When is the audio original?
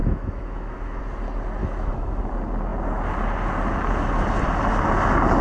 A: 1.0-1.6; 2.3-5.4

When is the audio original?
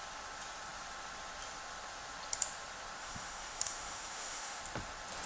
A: 0.0-3.0; 4.6-5.3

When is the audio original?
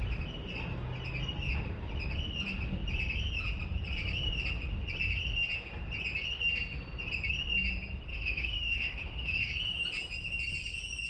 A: 0.0-8.1; 9.5-11.1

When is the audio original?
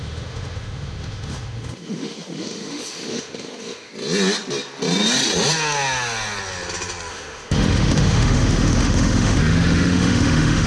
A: 3.9-7.1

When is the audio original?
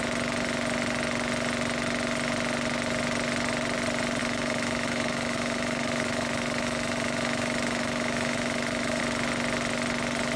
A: 0.0-4.2; 9.0-10.4